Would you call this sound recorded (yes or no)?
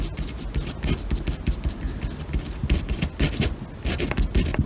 yes